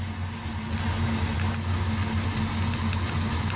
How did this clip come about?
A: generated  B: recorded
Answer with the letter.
B